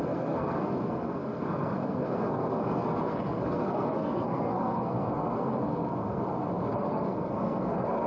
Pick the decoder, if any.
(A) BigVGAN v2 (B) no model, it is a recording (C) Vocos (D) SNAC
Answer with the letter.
D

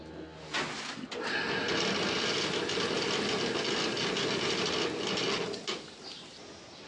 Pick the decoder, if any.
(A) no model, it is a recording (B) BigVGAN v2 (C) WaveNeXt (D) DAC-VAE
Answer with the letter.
A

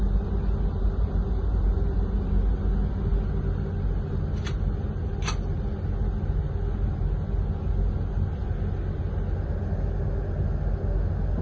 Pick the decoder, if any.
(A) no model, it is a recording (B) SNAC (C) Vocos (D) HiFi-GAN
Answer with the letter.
A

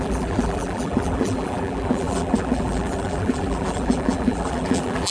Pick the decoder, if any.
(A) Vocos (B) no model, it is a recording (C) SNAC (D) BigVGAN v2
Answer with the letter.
D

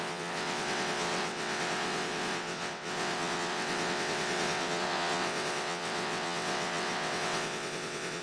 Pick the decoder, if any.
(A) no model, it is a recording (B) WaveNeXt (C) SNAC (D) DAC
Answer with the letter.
B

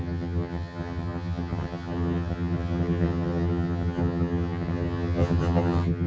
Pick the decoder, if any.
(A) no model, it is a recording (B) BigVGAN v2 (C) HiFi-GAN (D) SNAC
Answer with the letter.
C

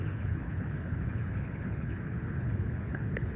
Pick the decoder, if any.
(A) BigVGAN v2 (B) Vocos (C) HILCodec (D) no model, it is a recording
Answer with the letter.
C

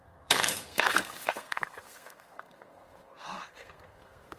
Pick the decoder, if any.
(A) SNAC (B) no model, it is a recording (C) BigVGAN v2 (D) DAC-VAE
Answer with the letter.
A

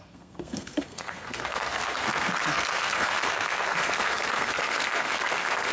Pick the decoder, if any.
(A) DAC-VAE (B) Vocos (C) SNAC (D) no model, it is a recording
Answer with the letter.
C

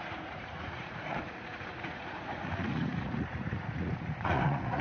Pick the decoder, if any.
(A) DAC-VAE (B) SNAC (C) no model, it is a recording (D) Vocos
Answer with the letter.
D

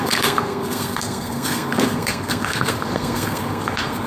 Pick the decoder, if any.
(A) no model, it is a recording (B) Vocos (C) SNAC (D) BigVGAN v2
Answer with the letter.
C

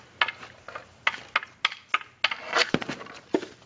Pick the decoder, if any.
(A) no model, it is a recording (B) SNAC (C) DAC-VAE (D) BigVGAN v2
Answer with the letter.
A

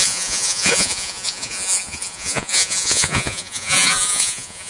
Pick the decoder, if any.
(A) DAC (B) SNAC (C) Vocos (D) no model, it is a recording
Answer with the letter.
C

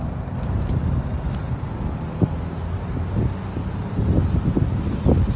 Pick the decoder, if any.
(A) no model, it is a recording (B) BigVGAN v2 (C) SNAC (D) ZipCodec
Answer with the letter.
A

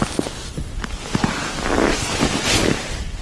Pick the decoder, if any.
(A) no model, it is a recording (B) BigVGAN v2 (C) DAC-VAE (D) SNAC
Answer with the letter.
A